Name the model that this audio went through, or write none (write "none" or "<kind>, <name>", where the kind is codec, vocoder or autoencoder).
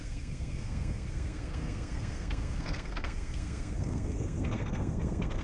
codec, SNAC